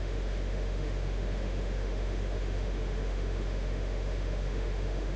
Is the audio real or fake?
fake